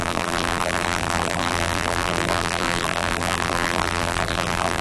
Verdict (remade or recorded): remade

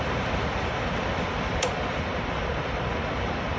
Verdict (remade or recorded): recorded